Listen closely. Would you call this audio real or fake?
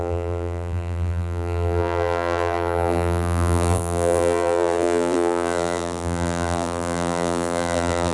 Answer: fake